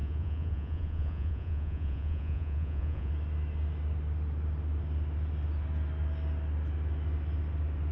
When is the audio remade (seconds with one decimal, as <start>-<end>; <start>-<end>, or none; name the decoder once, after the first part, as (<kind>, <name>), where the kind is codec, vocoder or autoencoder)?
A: 0.0-3.1 (vocoder, Vocos)